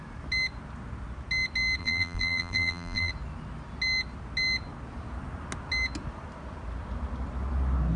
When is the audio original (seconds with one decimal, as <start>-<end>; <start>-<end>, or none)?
0.0-1.8; 3.1-8.0

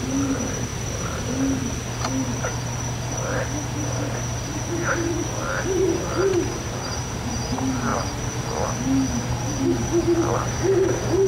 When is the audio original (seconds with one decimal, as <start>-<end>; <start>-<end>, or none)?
0.0-0.7; 1.3-2.5; 4.5-6.3; 7.5-11.3

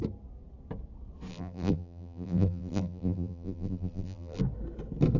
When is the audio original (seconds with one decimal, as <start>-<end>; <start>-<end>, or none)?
0.0-1.3; 4.4-5.2

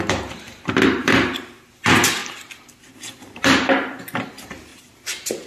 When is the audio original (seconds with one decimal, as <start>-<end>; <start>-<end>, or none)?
0.0-4.7

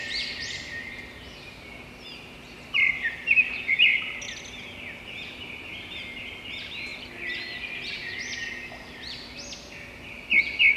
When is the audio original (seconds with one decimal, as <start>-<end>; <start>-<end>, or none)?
0.0-10.8